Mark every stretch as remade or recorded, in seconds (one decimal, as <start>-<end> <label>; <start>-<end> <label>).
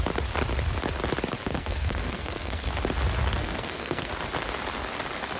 0.0-1.4 recorded; 1.4-2.7 remade; 2.7-3.4 recorded; 3.4-4.1 remade; 4.1-5.4 recorded